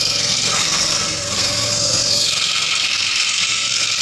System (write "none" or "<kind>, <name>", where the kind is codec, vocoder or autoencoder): codec, SNAC